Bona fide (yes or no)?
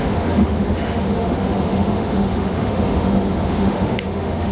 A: no